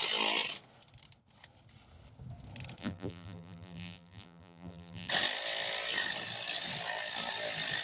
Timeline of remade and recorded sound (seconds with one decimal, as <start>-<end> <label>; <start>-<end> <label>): 0.0-2.8 recorded; 2.8-5.1 remade; 5.1-7.8 recorded